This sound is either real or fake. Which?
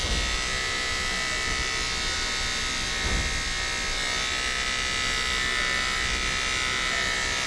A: real